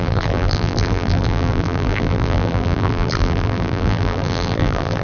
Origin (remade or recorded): remade